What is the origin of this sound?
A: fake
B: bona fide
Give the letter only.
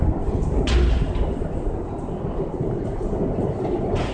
B